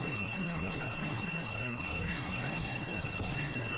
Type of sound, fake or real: fake